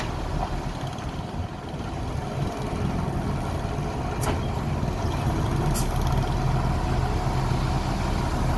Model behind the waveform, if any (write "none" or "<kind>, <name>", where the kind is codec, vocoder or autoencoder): none